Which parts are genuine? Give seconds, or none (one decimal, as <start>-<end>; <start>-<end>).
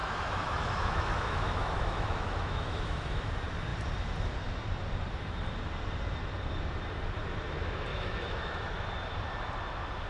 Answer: 3.3-7.9; 8.7-10.1